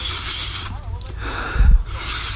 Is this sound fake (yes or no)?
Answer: no